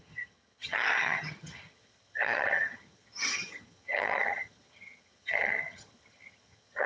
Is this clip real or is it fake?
fake